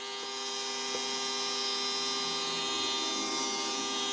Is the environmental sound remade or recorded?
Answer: recorded